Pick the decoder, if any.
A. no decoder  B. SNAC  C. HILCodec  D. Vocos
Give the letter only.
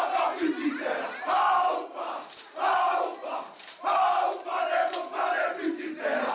A